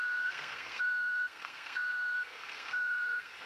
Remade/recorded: remade